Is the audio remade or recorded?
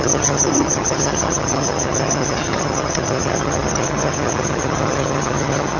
remade